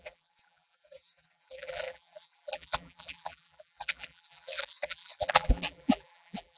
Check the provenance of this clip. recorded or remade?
remade